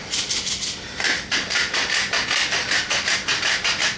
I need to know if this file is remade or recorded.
recorded